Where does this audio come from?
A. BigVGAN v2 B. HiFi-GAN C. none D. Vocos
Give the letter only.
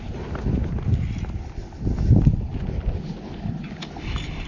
C